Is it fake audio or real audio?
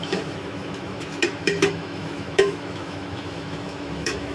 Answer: fake